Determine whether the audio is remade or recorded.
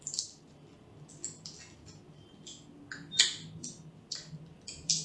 recorded